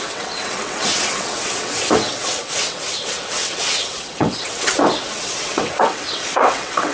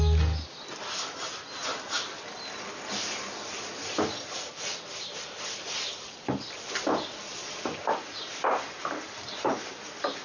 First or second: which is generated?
first